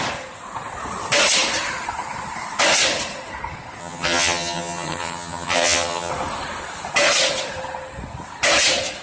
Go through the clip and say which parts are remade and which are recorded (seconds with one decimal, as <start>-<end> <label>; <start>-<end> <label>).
0.0-3.8 recorded; 3.8-6.1 remade; 6.1-9.0 recorded